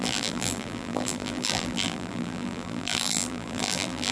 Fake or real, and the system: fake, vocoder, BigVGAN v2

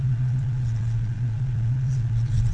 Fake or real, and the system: fake, vocoder, Vocos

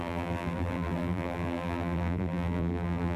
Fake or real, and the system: fake, vocoder, BigVGAN v2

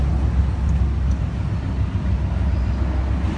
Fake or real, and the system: real